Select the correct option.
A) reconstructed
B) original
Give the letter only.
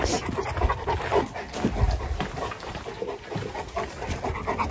B